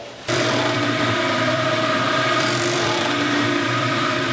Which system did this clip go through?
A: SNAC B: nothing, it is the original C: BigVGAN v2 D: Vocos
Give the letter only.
C